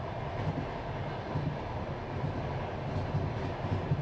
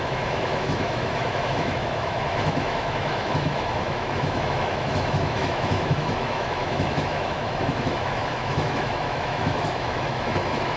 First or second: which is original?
first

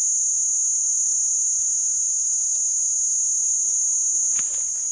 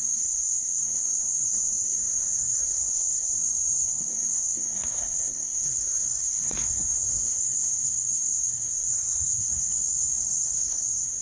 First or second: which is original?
first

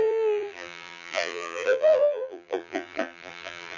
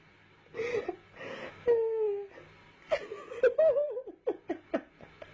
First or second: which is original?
second